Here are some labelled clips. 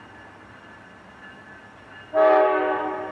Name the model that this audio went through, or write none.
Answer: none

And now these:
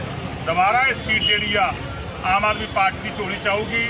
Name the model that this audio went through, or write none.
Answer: none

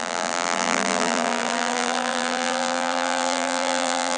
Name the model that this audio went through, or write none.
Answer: vocoder, BigVGAN v2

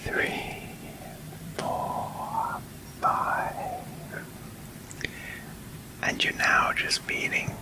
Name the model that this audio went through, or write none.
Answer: vocoder, BigVGAN v2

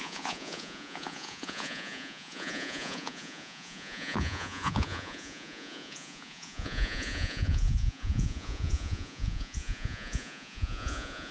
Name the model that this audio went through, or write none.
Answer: vocoder, Vocos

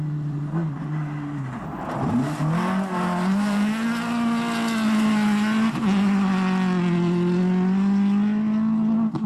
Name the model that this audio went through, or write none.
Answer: none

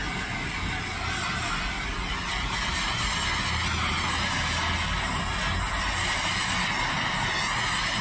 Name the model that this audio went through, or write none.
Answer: none